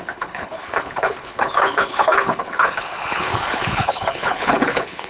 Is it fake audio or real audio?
fake